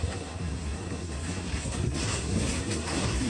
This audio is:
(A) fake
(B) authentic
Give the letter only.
A